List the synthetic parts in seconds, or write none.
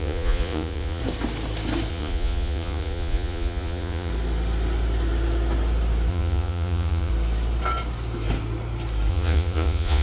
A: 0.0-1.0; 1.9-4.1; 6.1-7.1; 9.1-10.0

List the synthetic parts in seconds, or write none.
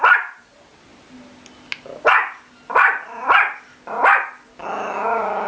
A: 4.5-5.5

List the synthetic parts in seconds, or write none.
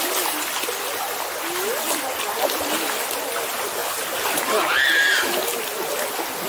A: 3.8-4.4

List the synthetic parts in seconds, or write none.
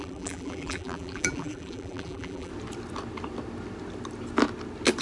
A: 0.0-2.5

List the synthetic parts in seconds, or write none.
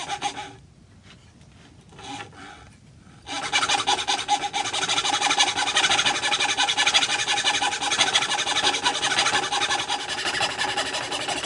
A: 7.1-7.6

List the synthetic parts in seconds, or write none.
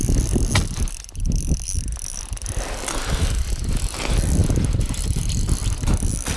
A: none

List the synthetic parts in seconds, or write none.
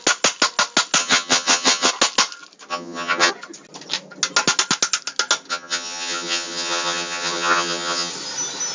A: 1.0-1.9; 2.7-3.3; 5.5-8.1